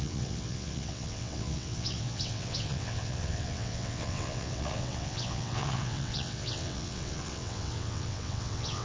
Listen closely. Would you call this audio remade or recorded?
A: remade